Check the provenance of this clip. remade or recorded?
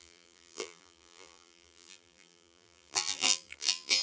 remade